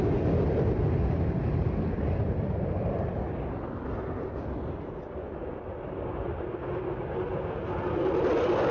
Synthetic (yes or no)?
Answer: no